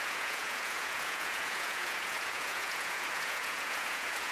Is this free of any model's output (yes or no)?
no